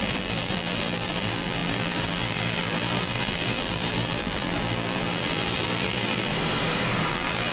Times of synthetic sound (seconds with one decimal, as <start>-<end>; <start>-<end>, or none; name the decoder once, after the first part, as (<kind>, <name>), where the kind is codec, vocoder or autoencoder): 0.0-6.3 (vocoder, BigVGAN v2); 7.1-7.5